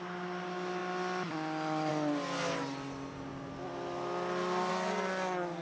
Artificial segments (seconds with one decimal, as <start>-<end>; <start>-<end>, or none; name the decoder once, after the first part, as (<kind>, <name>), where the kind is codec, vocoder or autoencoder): none